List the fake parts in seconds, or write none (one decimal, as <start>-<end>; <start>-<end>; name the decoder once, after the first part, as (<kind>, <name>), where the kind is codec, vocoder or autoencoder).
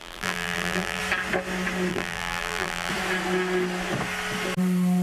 0.0-1.0 (vocoder, BigVGAN v2); 1.9-2.9